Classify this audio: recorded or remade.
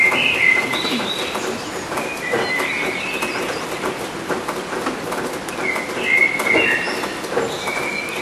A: recorded